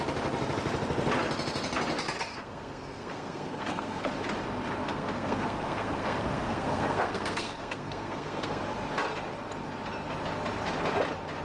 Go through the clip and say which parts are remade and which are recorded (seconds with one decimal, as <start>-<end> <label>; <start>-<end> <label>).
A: 0.0-2.3 recorded; 2.3-4.1 remade; 4.1-4.8 recorded; 4.8-8.6 remade; 8.6-11.4 recorded